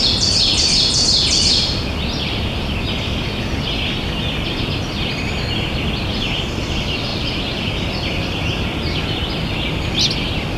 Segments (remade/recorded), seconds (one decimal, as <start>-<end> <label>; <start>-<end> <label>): 0.0-7.1 recorded; 7.1-7.9 remade; 7.9-10.6 recorded